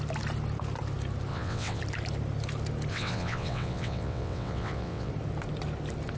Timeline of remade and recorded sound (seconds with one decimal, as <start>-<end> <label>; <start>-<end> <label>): 0.0-1.3 recorded; 1.3-1.8 remade; 1.8-2.9 recorded; 2.9-5.1 remade; 5.1-6.2 recorded